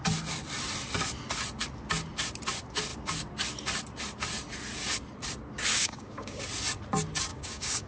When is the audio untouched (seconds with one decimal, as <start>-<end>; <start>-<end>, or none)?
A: 0.0-5.7; 6.4-7.3